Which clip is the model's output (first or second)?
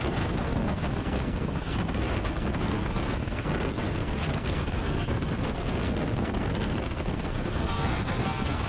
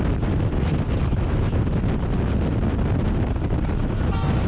first